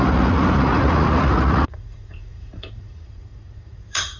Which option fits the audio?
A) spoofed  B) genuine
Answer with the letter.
A